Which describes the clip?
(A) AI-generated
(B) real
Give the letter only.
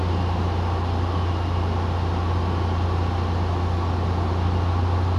B